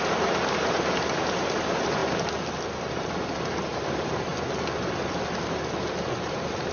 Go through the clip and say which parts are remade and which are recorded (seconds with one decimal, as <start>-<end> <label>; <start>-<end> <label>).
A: 0.0-2.0 remade; 2.0-2.9 recorded; 2.9-4.3 remade; 4.3-5.4 recorded; 5.4-6.7 remade